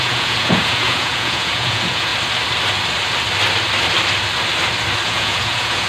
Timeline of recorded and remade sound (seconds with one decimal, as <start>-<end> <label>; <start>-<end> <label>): 0.0-2.1 remade; 2.1-5.1 recorded; 5.1-5.9 remade